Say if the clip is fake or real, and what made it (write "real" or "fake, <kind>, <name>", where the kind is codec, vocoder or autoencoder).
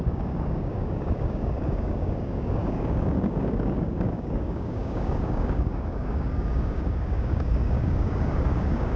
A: fake, codec, DAC